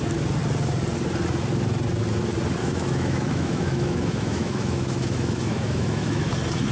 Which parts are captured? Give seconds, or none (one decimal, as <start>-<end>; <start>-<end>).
0.0-2.6; 6.3-6.7